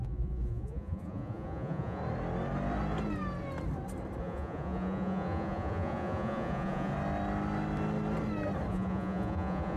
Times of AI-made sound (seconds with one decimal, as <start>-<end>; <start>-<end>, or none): 0.0-2.0; 4.2-6.9; 8.7-9.8

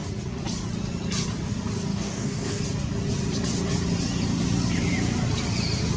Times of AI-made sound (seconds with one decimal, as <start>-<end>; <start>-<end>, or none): 1.9-2.6

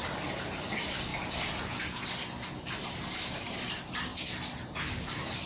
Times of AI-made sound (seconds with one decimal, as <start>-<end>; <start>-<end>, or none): none

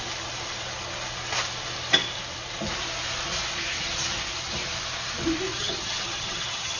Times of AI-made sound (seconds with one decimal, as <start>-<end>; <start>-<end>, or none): 5.5-6.8

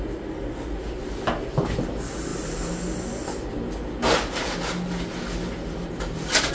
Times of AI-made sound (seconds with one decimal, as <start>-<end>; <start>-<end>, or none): none

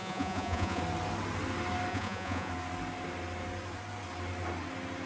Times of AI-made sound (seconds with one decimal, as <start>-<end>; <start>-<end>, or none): 0.0-0.8; 1.9-2.5

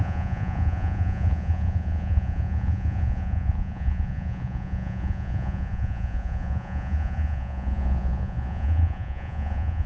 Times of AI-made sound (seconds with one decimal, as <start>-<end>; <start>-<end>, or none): 0.0-9.9